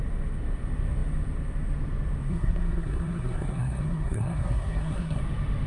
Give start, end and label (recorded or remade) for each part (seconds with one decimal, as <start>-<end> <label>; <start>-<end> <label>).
0.0-2.3 recorded; 2.3-5.2 remade; 5.2-5.7 recorded